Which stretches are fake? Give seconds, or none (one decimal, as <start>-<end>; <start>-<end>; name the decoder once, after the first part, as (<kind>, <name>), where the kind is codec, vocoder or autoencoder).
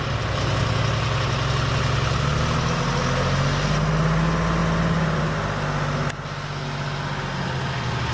none